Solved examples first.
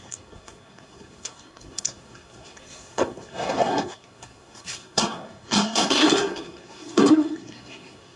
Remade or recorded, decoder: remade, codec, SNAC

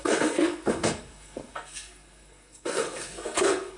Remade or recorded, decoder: remade, codec, SNAC